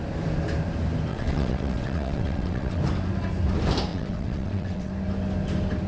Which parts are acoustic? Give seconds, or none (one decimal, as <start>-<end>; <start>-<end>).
0.0-1.1; 2.8-3.9; 4.9-5.9

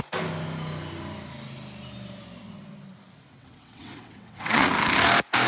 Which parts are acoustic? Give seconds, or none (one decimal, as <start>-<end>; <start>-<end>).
0.0-3.3; 4.7-5.5

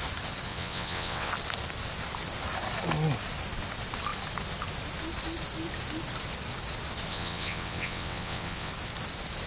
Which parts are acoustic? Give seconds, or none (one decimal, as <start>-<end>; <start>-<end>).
0.0-0.5; 1.3-7.1; 8.7-9.5

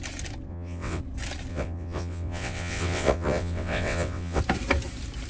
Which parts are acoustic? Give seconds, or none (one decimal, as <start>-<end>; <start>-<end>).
0.0-0.5; 1.0-1.5; 4.4-5.3

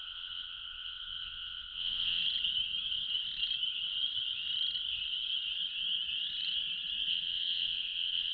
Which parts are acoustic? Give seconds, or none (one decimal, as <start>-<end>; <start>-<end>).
2.2-7.1

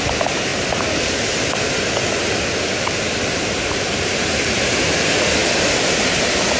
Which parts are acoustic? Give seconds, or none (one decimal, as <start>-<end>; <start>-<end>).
0.0-6.6

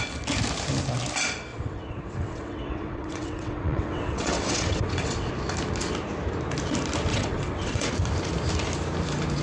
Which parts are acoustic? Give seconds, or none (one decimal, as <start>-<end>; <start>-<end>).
0.0-1.5; 5.3-7.1; 7.9-9.4